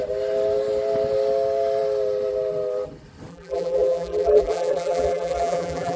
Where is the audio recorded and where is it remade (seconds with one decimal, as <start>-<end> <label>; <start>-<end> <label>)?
0.0-3.3 recorded; 3.3-6.0 remade